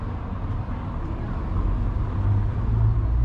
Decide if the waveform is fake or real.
real